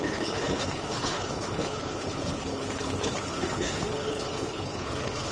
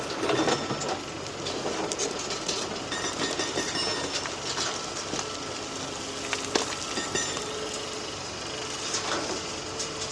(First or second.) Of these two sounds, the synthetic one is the first